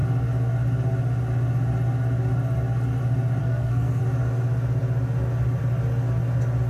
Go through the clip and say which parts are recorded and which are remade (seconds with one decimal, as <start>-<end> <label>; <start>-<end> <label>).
0.0-3.4 recorded; 3.4-4.0 remade; 4.0-6.7 recorded